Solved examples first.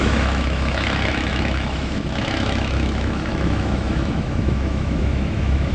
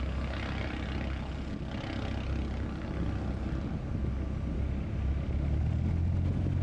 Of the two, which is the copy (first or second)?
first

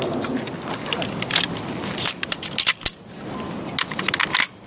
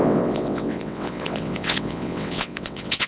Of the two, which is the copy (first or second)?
second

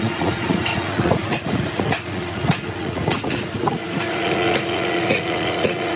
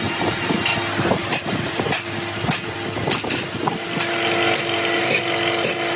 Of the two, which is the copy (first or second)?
first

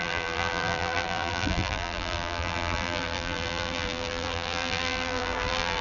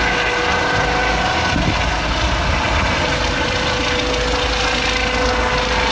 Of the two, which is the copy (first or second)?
first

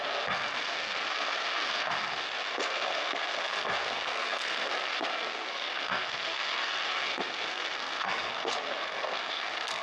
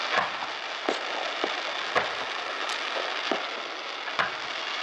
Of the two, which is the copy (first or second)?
first